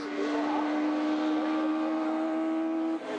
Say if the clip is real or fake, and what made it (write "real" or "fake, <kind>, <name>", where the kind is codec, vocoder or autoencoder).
real